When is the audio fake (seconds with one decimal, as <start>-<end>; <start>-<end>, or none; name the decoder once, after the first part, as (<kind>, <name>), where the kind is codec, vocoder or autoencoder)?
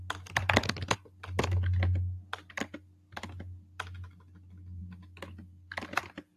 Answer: none